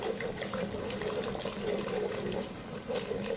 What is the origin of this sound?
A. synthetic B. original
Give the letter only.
B